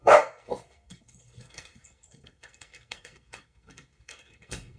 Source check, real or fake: fake